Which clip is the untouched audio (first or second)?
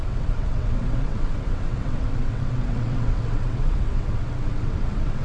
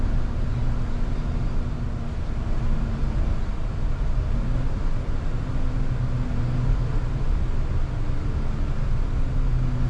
second